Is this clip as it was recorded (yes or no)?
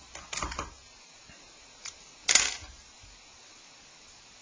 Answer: yes